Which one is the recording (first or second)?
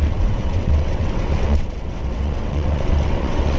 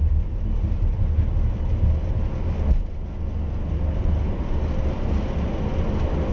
second